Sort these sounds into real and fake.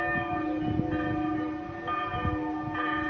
real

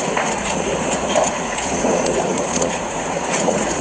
fake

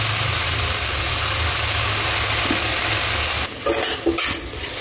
real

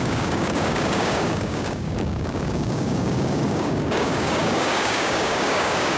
fake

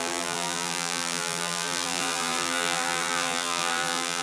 fake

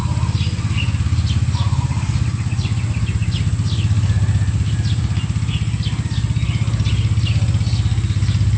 real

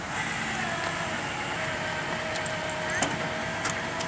real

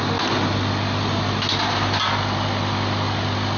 real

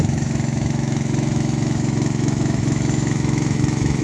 fake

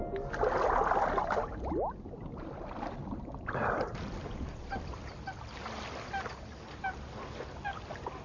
real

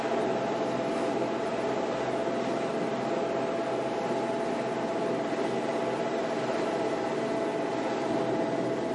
real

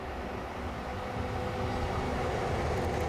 real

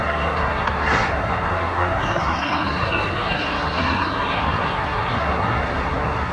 fake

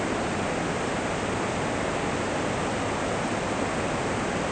real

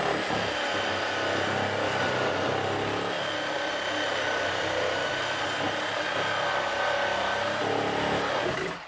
real